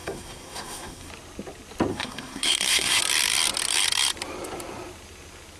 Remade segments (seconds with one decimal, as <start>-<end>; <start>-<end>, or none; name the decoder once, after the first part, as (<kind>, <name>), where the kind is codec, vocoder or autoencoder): 0.0-1.1 (codec, SNAC); 1.9-3.0